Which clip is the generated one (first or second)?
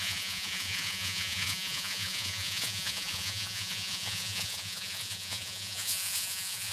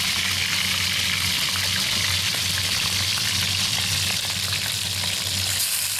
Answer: first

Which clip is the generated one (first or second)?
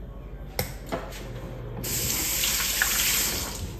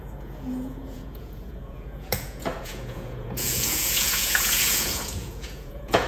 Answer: second